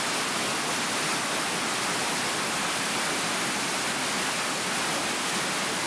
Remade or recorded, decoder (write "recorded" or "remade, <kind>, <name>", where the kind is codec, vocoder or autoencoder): recorded